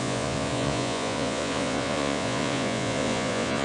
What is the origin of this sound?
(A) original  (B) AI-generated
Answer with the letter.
B